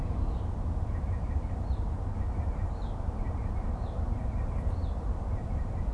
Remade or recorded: remade